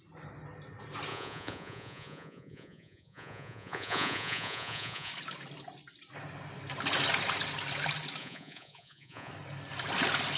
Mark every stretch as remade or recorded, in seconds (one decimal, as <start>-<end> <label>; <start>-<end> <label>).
0.0-1.1 recorded; 1.1-5.1 remade; 5.1-8.2 recorded; 8.2-9.3 remade; 9.3-10.4 recorded